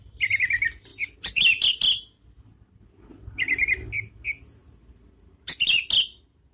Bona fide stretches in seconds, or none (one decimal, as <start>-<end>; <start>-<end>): 0.0-0.9; 1.7-6.5